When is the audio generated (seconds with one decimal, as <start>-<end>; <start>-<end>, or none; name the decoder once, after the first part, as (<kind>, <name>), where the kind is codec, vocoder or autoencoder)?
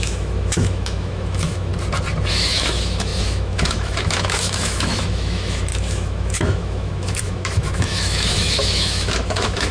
0.0-1.7 (autoencoder, DAC-VAE); 2.3-9.7